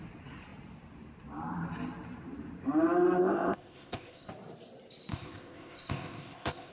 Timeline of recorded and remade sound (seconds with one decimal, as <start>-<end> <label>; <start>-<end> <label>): 0.0-3.2 recorded; 3.2-4.3 remade; 4.3-5.1 recorded; 5.1-6.7 remade